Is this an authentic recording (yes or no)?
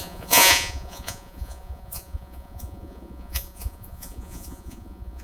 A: no